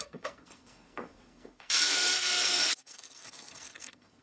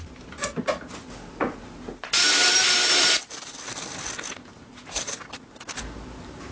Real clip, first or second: second